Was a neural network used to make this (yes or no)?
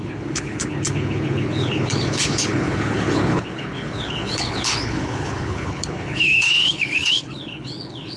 yes